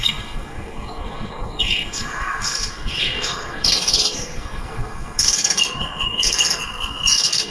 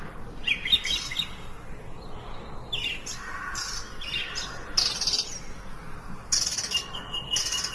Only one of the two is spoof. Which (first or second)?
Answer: first